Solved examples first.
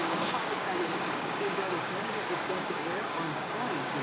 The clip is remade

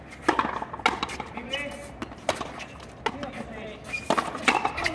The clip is recorded